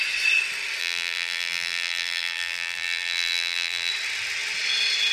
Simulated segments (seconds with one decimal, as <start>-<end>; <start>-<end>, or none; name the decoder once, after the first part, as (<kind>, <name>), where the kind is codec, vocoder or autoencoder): 0.8-3.9 (vocoder, BigVGAN v2)